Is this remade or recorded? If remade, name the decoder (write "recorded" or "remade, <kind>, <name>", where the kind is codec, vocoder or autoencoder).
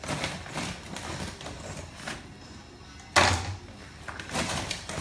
recorded